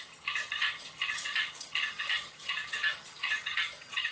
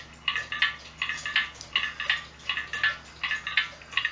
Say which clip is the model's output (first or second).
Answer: first